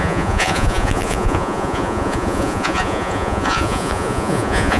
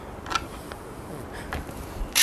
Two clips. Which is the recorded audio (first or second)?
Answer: second